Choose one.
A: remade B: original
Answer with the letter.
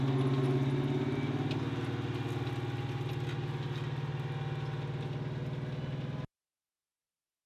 B